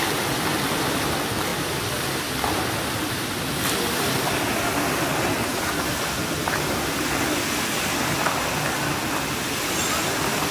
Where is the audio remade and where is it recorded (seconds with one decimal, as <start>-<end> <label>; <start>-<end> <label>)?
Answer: 0.0-10.5 recorded